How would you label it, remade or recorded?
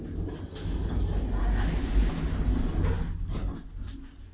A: recorded